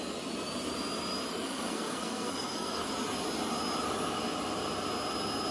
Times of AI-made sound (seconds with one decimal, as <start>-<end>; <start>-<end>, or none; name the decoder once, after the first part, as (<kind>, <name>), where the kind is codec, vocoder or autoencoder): 1.3-2.9 (codec, SNAC)